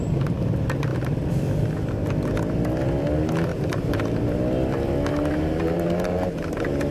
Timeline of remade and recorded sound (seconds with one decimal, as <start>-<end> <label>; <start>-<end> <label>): 0.0-3.5 recorded; 3.5-4.4 remade; 4.4-5.1 recorded; 5.1-6.9 remade